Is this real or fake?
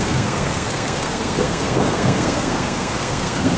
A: fake